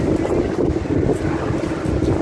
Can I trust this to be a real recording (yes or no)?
yes